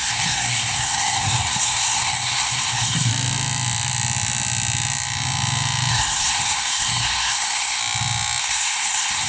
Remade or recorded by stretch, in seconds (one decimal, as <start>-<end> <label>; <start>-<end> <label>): 0.0-3.1 remade; 3.1-5.9 recorded; 5.9-7.8 remade; 7.8-8.4 recorded; 8.4-9.3 remade